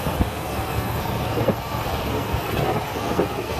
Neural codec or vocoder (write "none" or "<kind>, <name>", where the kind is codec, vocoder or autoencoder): codec, SNAC